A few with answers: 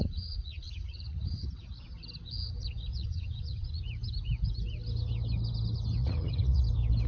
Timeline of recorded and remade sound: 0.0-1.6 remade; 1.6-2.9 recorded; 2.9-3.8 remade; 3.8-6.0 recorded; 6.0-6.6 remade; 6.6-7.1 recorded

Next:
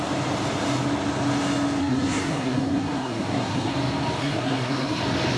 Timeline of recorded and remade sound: 0.0-1.8 recorded; 1.8-3.7 remade; 3.7-4.2 recorded; 4.2-5.0 remade; 5.0-5.4 recorded